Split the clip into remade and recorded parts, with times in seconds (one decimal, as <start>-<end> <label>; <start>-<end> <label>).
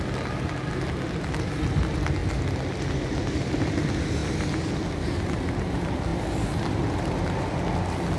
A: 0.0-8.2 recorded